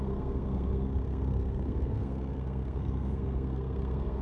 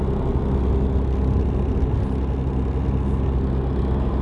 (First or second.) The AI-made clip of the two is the first